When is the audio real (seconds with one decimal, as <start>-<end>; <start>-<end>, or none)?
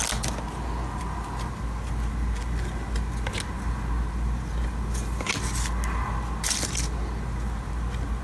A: 0.0-8.2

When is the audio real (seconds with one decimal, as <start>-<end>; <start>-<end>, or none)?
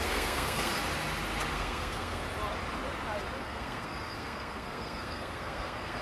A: 0.7-1.5; 2.2-3.4